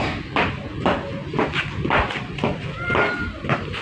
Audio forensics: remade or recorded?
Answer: recorded